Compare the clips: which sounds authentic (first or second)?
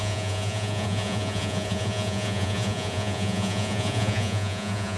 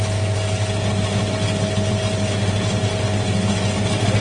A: second